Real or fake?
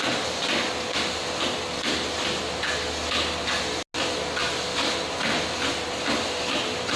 real